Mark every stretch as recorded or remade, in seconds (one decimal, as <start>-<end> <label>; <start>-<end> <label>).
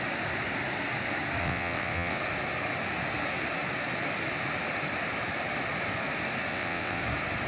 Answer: 0.0-1.4 recorded; 1.4-2.2 remade; 2.2-6.5 recorded; 6.5-7.0 remade; 7.0-7.5 recorded